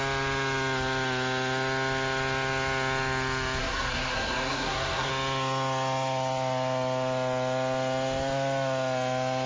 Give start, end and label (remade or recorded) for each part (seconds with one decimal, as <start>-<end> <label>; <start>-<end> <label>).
0.0-3.6 recorded; 3.6-5.1 remade; 5.1-9.5 recorded